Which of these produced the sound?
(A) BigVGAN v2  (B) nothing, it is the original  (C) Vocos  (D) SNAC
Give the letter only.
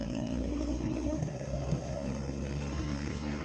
D